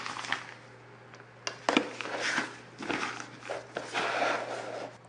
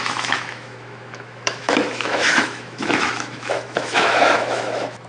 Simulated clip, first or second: second